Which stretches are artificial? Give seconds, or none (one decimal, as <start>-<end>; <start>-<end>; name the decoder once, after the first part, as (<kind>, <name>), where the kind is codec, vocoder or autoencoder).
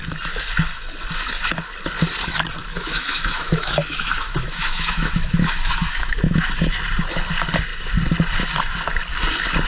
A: 2.6-6.5 (autoencoder, DAC-VAE)